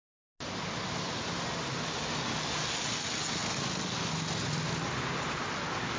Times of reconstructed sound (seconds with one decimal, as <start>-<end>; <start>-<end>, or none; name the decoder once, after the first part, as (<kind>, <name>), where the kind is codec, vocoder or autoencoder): none